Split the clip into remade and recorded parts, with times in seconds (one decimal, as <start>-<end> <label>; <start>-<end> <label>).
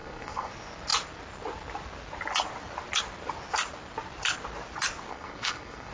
0.0-0.5 remade; 0.5-5.1 recorded; 5.1-5.9 remade